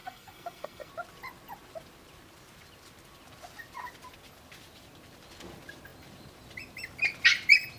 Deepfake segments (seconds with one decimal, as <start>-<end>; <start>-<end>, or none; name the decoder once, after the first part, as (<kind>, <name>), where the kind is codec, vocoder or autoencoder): 0.0-0.9 (codec, SNAC)